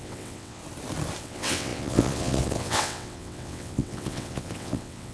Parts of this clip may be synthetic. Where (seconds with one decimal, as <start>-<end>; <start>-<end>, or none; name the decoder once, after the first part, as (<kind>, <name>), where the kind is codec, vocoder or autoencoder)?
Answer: 0.0-0.6 (vocoder, WaveNeXt); 1.2-5.1